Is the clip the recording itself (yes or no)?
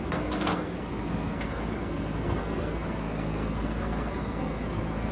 no